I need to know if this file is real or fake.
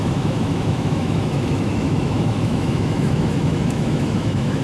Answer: fake